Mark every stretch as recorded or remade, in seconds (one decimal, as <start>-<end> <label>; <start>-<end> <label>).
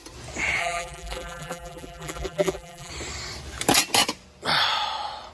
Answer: 0.0-0.6 recorded; 0.6-2.9 remade; 2.9-5.3 recorded